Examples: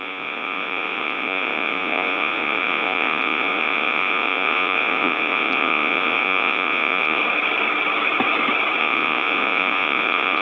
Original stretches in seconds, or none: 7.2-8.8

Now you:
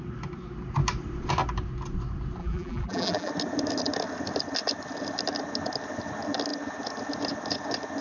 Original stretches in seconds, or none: 0.0-2.4; 3.3-8.0